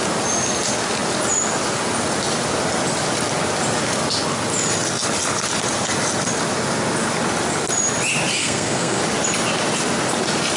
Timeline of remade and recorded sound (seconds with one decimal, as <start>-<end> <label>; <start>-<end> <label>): 0.0-8.4 recorded; 8.4-9.0 remade; 9.0-10.6 recorded